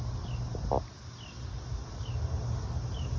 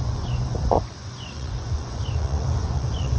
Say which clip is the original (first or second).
first